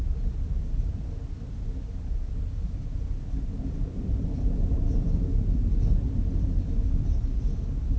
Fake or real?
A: real